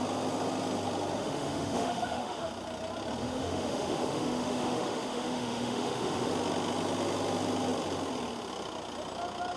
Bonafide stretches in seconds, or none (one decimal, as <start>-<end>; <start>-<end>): 0.0-1.2; 2.5-3.2; 6.3-9.6